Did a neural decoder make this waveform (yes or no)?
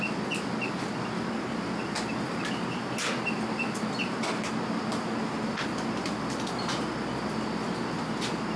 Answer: no